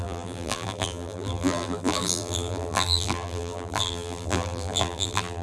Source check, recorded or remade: remade